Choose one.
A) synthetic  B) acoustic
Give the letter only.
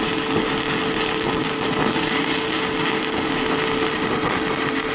B